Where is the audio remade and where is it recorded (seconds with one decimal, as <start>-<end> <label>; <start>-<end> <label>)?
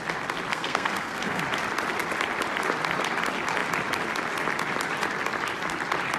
0.0-0.5 recorded; 0.5-1.4 remade; 1.4-6.2 recorded